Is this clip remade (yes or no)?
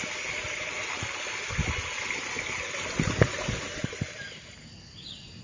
no